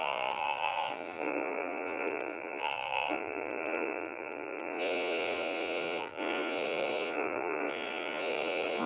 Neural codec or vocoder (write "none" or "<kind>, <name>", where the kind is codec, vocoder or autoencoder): vocoder, Vocos